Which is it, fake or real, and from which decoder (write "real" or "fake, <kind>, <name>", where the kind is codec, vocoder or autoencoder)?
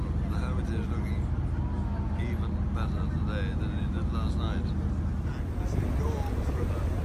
real